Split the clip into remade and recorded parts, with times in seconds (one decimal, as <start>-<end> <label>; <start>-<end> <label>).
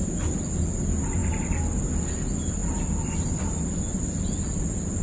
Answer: 0.0-5.0 recorded